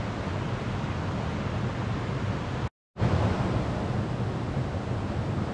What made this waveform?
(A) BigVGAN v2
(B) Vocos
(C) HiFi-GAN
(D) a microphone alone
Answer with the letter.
D